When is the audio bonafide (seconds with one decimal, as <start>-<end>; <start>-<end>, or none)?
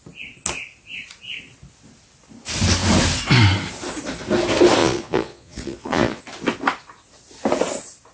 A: 0.0-4.8; 6.2-8.1